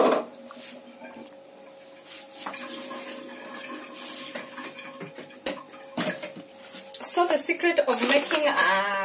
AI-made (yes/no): no